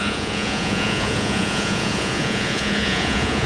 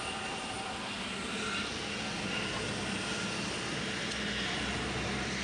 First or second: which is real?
second